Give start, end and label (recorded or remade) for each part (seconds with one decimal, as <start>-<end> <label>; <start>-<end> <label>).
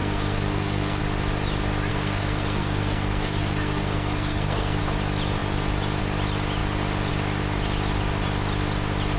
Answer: 0.0-1.0 remade; 1.0-1.9 recorded; 1.9-4.8 remade; 4.8-9.2 recorded